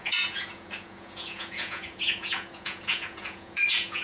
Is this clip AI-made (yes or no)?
yes